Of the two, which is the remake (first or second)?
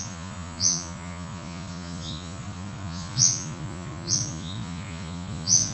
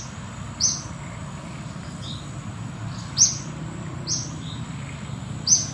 first